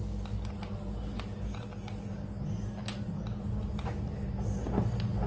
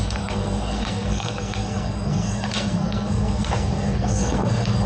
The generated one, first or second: second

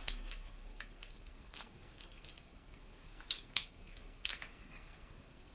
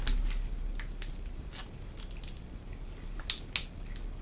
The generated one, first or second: first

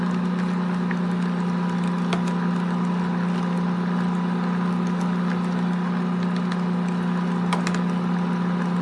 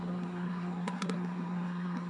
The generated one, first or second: second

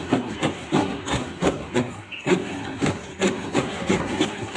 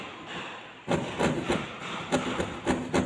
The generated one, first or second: first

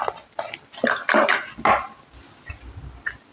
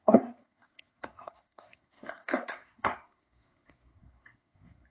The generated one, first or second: second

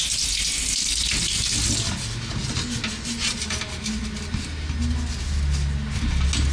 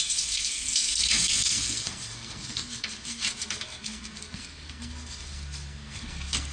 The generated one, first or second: second